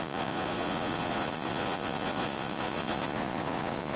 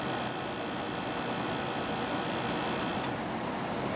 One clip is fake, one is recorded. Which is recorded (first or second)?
second